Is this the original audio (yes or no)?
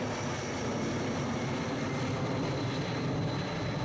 yes